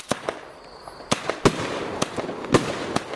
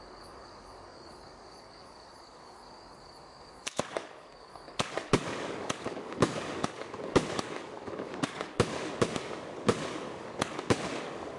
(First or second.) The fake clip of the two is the second